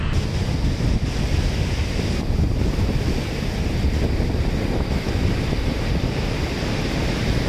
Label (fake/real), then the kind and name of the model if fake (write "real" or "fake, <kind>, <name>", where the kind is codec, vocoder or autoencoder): real